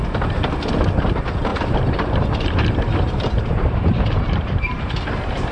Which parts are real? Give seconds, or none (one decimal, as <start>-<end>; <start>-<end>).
0.0-1.5; 4.8-5.5